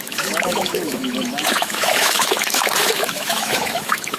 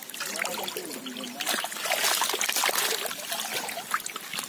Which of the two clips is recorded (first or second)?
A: second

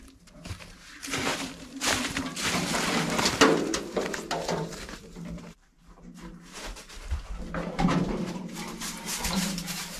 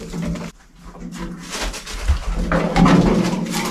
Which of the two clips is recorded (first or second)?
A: second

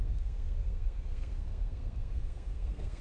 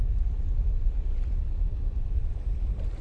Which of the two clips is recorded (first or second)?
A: second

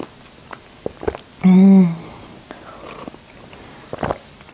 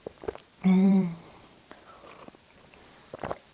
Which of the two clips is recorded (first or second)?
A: first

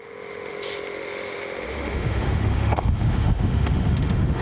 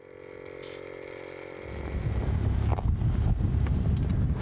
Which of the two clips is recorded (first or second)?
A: second